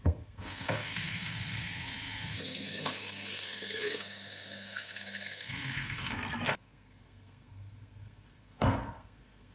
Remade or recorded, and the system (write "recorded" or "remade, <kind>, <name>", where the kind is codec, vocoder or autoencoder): remade, codec, SNAC